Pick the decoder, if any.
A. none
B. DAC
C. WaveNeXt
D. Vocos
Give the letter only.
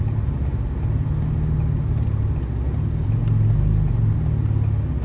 A